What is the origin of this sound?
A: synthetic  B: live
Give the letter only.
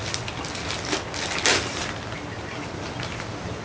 B